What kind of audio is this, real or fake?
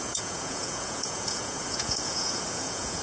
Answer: fake